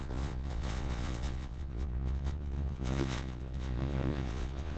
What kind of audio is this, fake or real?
fake